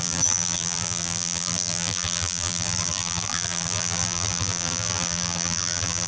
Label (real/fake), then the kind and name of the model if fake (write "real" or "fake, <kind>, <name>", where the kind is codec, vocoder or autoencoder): fake, vocoder, BigVGAN v2